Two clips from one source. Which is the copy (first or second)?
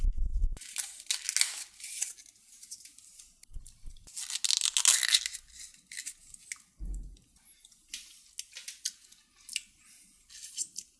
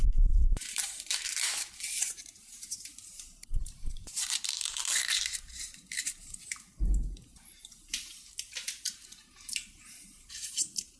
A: second